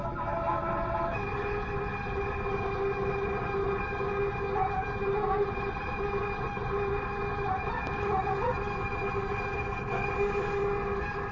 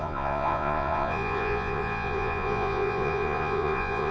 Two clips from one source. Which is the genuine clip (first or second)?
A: first